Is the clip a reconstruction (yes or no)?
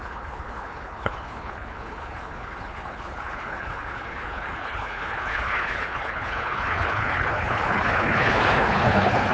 yes